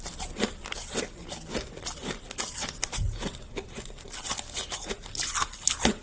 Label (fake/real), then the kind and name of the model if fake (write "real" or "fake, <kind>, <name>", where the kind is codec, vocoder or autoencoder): real